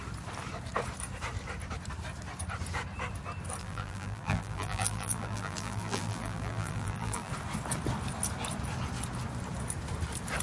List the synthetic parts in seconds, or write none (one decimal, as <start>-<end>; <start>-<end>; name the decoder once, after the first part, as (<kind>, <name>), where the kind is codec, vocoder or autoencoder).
3.6-7.3 (vocoder, BigVGAN v2)